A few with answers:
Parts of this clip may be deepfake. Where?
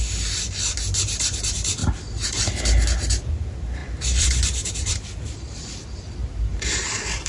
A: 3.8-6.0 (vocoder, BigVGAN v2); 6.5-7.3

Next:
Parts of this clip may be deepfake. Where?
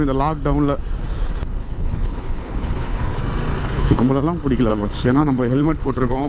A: 1.6-3.2 (codec, HILCodec); 3.6-4.1; 4.7-6.3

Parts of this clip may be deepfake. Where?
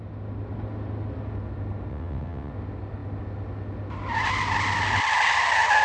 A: 1.9-2.5 (vocoder, WaveNeXt)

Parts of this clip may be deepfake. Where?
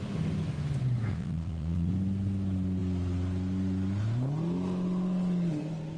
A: 1.1-1.9 (vocoder, Vocos)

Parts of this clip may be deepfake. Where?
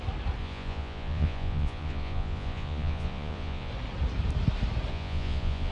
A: 0.4-3.7 (vocoder, Vocos); 4.9-5.7